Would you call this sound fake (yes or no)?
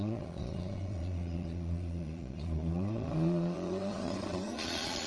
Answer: yes